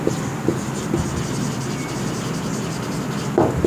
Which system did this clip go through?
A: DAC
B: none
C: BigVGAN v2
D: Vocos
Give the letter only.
B